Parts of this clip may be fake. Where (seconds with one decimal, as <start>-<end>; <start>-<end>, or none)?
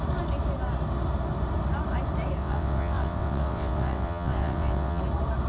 2.4-5.0